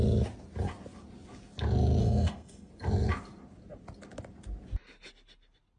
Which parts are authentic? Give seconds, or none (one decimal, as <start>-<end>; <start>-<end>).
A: 0.0-2.0; 2.7-5.8